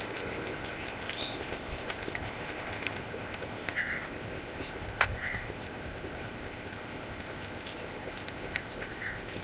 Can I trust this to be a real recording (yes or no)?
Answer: no